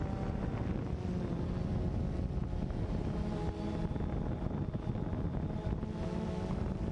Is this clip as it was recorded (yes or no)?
yes